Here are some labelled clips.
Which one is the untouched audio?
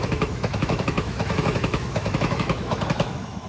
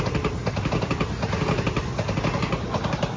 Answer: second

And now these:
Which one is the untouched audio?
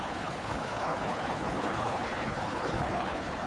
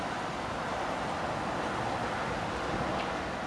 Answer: second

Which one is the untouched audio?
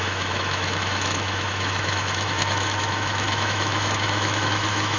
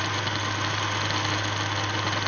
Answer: second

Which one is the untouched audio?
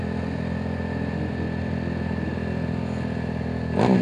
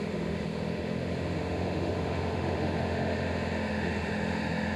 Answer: first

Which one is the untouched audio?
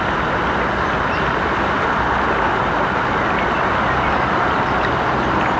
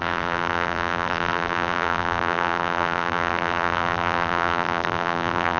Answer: first